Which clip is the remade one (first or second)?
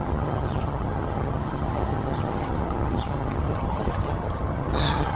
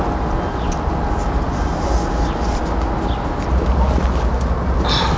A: first